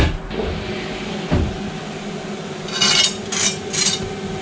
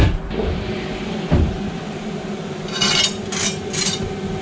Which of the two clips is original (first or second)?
first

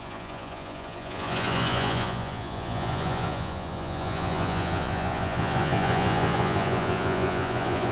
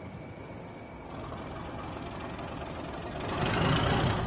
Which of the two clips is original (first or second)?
second